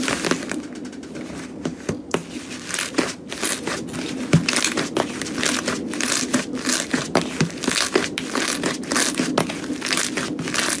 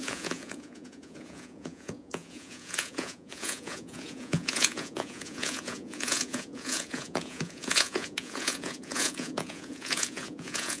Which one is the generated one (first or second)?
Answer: second